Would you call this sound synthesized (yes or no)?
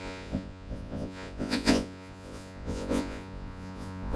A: yes